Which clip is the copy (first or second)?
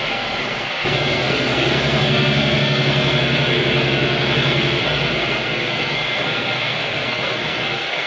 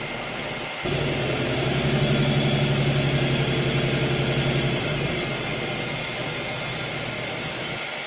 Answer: first